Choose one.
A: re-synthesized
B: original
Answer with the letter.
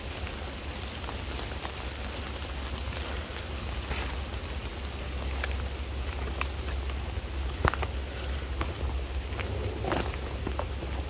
B